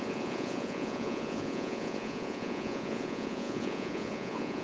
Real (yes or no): no